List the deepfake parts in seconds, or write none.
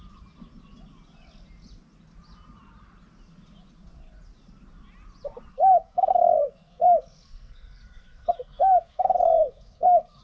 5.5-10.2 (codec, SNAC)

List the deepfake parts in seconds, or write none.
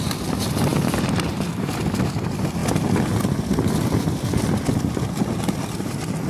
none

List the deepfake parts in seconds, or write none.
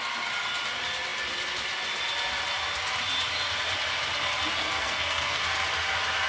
4.6-5.4 (codec, SNAC)